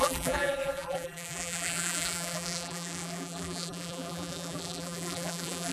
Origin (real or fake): fake